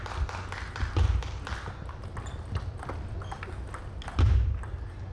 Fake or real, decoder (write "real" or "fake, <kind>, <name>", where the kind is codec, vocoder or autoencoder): real